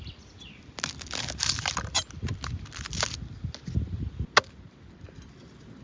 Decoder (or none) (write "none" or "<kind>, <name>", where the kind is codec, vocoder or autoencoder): none